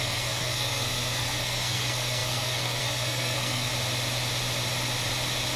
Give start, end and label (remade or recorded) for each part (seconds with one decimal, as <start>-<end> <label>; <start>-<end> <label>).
0.0-3.7 remade; 3.7-5.6 recorded